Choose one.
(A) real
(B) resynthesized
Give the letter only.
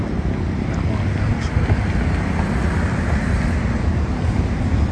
A